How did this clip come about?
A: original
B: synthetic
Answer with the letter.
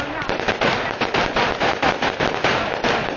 A